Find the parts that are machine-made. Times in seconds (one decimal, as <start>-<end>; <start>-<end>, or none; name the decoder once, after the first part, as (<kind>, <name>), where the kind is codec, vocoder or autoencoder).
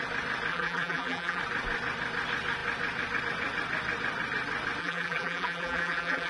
0.5-1.4 (vocoder, BigVGAN v2); 4.8-6.3